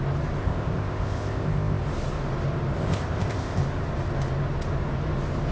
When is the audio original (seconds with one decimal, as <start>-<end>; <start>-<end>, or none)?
0.0-0.4; 1.8-2.8; 3.6-5.5